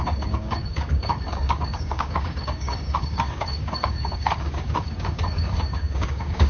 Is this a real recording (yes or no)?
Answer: no